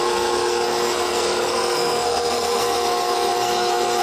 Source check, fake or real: fake